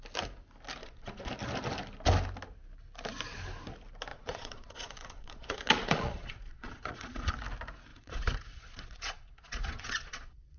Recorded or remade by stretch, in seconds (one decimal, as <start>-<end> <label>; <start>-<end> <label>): 0.0-0.8 recorded; 0.8-1.3 remade; 1.3-4.1 recorded; 4.1-7.3 remade; 7.3-7.9 recorded; 7.9-10.6 remade